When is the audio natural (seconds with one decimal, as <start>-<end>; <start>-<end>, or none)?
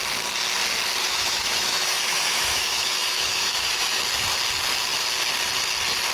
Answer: 0.0-1.0; 4.0-6.1